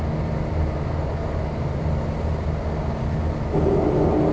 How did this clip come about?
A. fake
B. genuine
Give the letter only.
B